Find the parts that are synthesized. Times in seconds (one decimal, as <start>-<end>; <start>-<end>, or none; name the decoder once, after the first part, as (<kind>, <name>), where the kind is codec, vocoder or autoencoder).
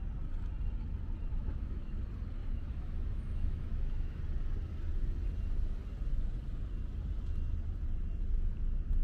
1.3-1.9 (autoencoder, DAC-VAE); 2.4-4.2